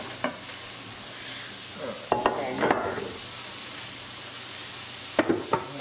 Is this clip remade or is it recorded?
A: recorded